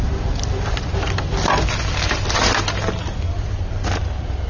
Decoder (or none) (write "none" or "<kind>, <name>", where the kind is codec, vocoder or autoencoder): none